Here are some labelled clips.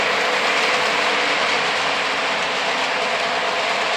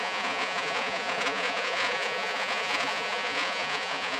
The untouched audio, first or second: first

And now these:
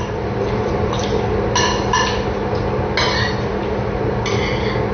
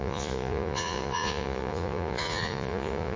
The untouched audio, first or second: first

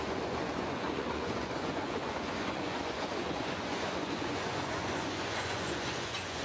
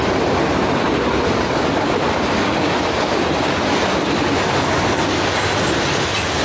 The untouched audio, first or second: second